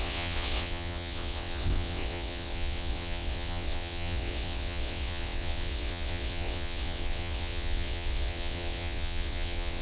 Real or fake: fake